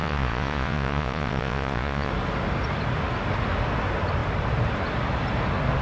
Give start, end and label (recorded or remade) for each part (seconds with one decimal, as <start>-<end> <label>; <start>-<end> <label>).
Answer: 0.0-2.1 remade; 2.1-5.8 recorded